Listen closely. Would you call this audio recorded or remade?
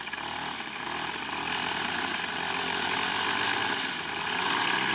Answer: recorded